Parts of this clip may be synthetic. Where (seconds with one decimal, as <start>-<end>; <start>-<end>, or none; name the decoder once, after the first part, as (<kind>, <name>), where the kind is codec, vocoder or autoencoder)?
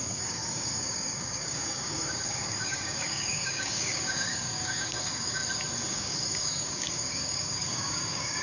0.0-5.4 (codec, DAC); 5.9-8.4